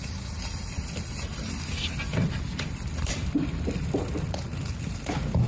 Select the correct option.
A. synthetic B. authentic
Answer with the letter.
B